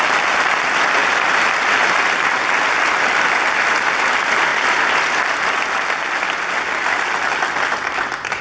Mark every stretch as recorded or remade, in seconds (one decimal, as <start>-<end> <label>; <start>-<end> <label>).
0.0-8.4 recorded

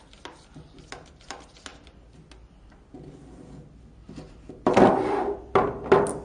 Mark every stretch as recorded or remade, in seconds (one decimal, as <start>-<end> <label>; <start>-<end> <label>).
0.0-6.2 recorded

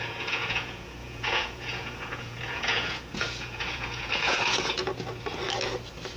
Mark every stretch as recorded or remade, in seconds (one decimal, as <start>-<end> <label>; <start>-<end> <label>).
0.0-4.9 remade; 4.9-6.2 recorded

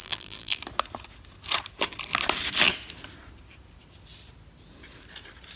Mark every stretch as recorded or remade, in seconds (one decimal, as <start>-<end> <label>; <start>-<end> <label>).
0.0-0.6 remade; 0.6-5.6 recorded

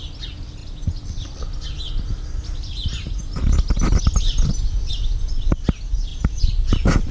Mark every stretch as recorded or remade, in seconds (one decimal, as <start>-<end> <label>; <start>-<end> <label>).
0.0-7.1 recorded